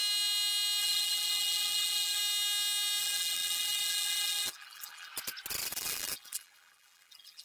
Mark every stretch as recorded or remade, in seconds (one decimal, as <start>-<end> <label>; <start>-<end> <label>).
0.0-0.8 recorded; 0.8-2.2 remade; 2.2-3.0 recorded; 3.0-5.1 remade; 5.1-5.7 recorded; 5.7-7.4 remade